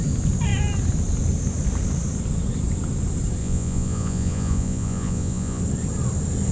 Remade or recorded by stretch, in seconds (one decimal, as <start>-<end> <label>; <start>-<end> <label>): 0.0-3.4 recorded; 3.4-5.6 remade; 5.6-6.5 recorded